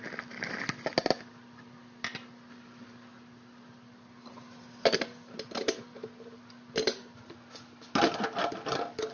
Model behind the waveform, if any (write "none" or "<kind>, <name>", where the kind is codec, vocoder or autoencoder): none